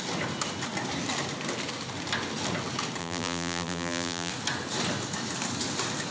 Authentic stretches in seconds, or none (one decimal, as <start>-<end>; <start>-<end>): 0.0-3.0; 4.3-6.1